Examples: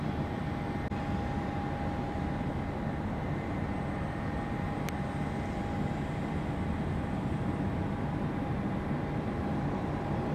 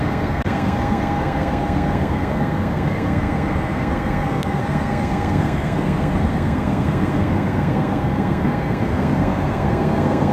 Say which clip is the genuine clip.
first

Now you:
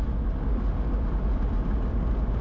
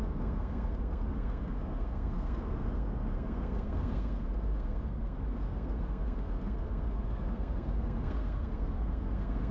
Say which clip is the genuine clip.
first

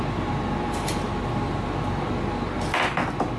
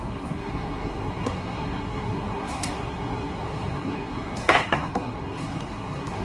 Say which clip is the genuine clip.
first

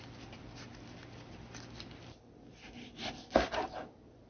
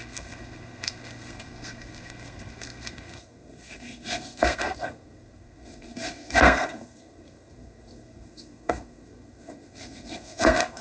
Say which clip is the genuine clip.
first